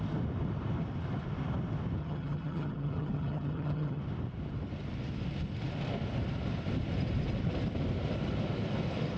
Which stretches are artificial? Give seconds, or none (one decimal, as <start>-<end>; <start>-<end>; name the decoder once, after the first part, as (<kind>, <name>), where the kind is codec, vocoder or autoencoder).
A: 2.0-4.0 (vocoder, HiFi-GAN)